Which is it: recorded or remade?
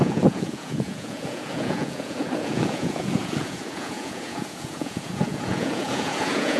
remade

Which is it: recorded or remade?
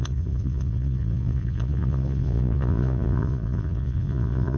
remade